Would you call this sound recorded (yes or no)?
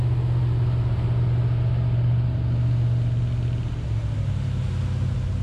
yes